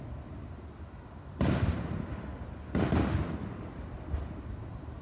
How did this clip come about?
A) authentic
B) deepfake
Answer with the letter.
A